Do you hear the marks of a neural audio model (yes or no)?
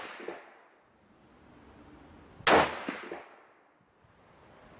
no